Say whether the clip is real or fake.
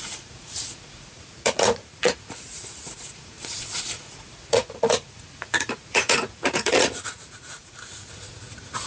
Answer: fake